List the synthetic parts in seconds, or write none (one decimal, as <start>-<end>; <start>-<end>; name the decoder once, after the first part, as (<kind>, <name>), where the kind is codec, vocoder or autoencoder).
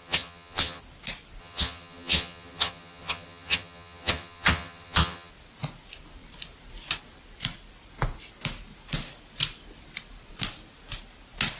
0.0-0.8 (vocoder, HiFi-GAN); 1.4-5.3